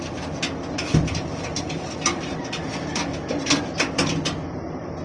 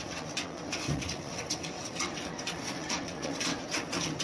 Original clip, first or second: first